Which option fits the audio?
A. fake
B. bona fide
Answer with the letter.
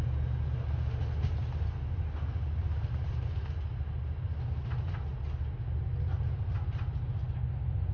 B